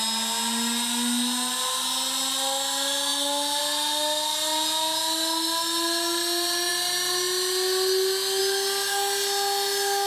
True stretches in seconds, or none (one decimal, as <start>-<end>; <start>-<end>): 0.0-10.1